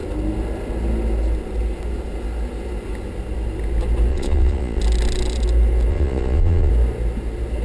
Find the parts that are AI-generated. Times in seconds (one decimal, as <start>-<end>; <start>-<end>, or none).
4.1-4.8; 5.9-6.7